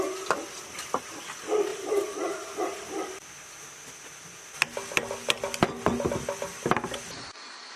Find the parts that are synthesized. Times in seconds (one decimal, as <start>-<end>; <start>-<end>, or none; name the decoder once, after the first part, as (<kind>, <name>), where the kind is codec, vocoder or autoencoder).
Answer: 1.7-2.6 (vocoder, BigVGAN v2)